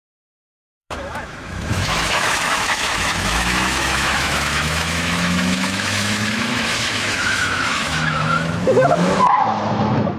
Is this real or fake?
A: fake